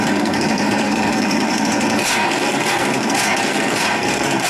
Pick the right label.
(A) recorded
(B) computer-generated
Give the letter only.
B